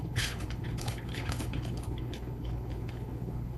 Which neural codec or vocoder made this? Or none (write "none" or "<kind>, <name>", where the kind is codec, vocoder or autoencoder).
codec, HILCodec